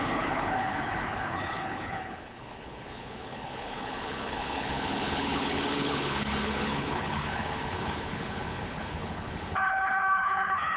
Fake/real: fake